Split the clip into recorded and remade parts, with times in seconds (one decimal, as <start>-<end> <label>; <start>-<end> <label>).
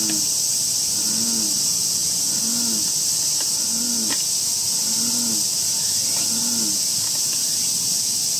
0.0-8.4 recorded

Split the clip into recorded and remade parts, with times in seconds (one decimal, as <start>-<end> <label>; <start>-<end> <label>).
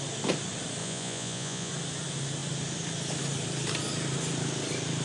0.0-0.8 recorded; 0.8-1.7 remade; 1.7-5.0 recorded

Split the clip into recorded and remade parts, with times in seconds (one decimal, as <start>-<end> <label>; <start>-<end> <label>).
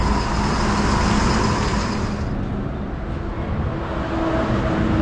0.0-5.0 recorded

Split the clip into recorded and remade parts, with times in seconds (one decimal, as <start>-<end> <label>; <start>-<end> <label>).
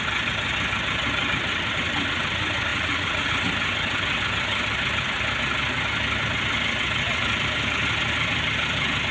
0.0-2.7 recorded; 2.7-3.3 remade; 3.3-9.1 recorded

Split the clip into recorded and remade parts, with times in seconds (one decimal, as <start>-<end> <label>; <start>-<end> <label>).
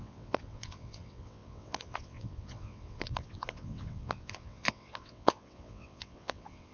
0.0-6.7 remade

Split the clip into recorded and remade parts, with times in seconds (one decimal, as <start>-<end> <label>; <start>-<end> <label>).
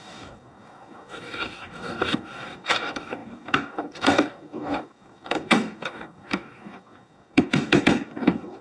0.0-8.6 remade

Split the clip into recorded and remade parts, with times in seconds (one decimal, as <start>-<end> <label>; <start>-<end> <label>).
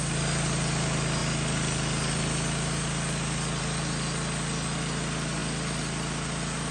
0.0-6.7 recorded